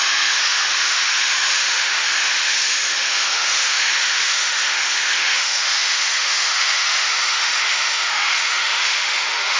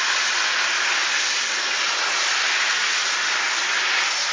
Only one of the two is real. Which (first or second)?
second